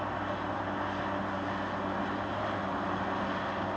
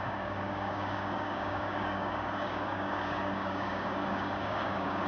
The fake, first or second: second